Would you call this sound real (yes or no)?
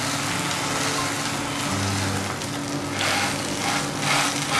yes